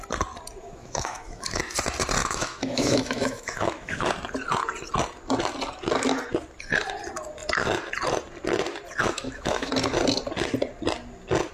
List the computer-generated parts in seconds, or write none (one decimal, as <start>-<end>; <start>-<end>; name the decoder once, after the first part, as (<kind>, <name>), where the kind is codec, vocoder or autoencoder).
0.6-1.6 (autoencoder, DAC-VAE); 2.2-4.1; 9.0-9.7